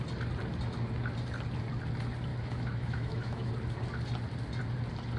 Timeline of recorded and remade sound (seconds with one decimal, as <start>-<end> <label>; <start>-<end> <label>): 0.0-2.3 recorded; 2.3-3.5 remade; 3.5-5.2 recorded